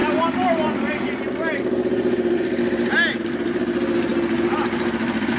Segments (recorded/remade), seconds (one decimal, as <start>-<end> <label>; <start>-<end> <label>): 0.0-5.4 recorded

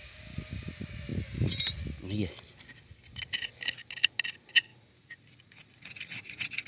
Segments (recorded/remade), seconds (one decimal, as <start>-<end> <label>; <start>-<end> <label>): 0.0-4.7 recorded; 4.7-6.7 remade

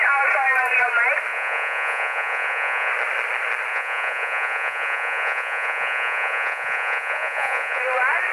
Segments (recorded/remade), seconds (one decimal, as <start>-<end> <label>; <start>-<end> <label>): 0.0-1.3 recorded; 1.3-2.9 remade; 2.9-3.7 recorded; 3.7-7.8 remade; 7.8-8.3 recorded

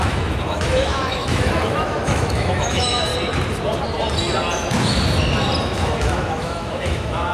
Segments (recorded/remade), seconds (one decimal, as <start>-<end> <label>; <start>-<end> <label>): 0.0-3.1 remade; 3.1-5.6 recorded; 5.6-7.3 remade

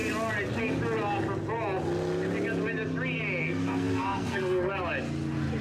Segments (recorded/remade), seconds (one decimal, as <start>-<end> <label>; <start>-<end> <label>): 0.0-3.4 recorded; 3.4-4.7 remade; 4.7-5.6 recorded

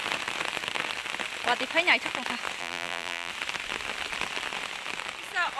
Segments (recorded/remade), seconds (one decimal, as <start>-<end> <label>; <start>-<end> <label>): 0.0-2.6 recorded; 2.6-3.3 remade; 3.3-5.6 recorded

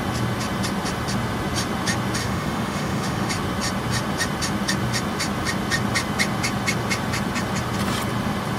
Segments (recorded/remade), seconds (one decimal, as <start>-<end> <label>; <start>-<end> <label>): 0.0-2.2 recorded; 2.2-3.3 remade; 3.3-8.6 recorded